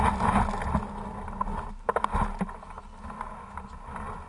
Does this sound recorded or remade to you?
recorded